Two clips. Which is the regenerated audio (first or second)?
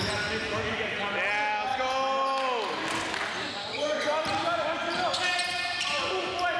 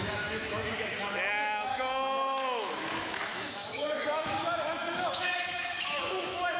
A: second